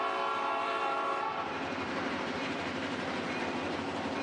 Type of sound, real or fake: fake